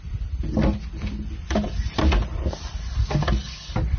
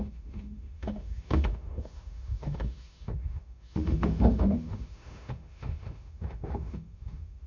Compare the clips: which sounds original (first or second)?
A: first